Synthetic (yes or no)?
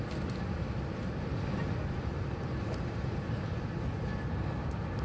no